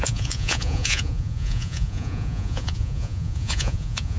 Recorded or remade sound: remade